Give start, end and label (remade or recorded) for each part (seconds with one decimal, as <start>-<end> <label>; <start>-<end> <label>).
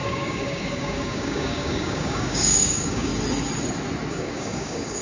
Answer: 0.0-3.1 remade; 3.1-4.1 recorded; 4.1-5.0 remade